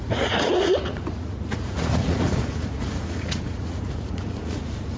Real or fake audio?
fake